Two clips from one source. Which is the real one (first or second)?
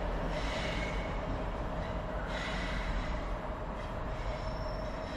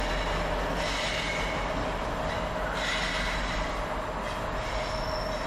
second